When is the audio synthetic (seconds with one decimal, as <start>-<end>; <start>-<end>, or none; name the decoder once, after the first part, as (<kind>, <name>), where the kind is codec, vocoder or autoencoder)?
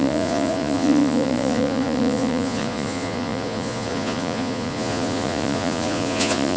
0.0-6.6 (vocoder, Vocos)